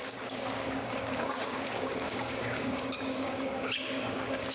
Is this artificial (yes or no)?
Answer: yes